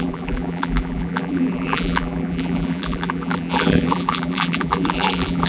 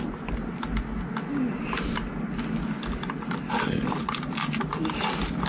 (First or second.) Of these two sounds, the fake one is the first